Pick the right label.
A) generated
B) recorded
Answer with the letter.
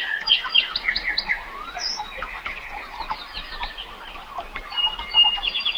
B